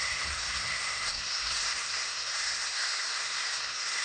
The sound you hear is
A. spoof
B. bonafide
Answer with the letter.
A